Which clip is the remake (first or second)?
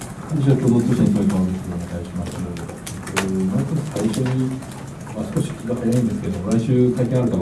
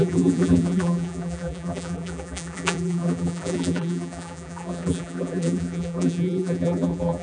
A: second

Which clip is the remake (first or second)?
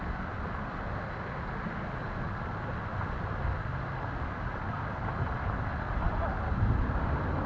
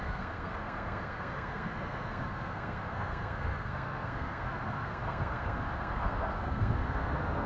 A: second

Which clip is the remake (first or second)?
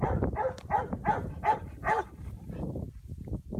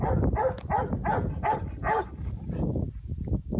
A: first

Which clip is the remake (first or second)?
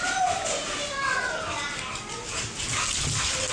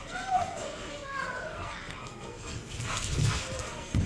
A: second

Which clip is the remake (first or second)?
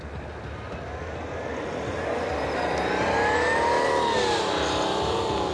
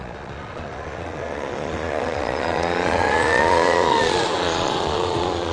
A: second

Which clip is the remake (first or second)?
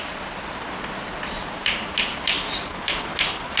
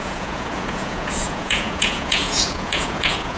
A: second